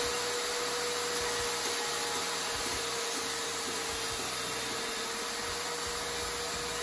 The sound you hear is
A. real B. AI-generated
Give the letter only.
A